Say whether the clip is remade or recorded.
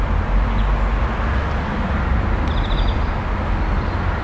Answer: recorded